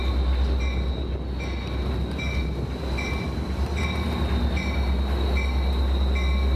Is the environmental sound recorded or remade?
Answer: recorded